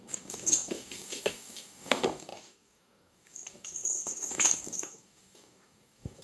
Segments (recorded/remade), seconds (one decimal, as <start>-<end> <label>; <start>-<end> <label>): 0.0-6.2 remade

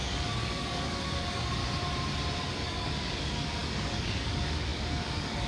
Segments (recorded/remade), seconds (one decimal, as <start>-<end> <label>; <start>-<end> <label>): 0.0-1.6 remade; 1.6-2.4 recorded; 2.4-5.5 remade

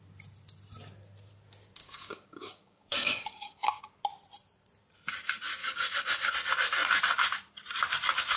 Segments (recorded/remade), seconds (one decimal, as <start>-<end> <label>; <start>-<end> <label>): 0.0-1.8 recorded; 1.8-3.8 remade; 3.8-5.6 recorded; 5.6-6.3 remade; 6.3-8.4 recorded

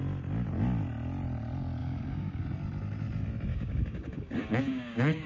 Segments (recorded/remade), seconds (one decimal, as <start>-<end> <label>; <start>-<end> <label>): 0.0-1.8 recorded; 1.8-2.4 remade; 2.4-3.5 recorded; 3.5-5.3 remade

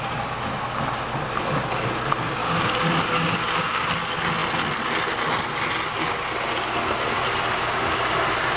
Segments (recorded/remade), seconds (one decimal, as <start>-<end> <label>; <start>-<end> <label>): 0.0-2.4 recorded; 2.4-3.9 remade; 3.9-8.6 recorded